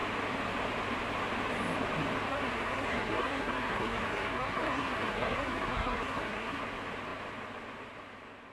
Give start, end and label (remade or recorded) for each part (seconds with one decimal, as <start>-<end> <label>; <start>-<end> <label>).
0.0-2.3 recorded; 2.3-6.6 remade; 6.6-8.5 recorded